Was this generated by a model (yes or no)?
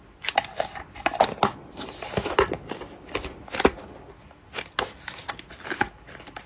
no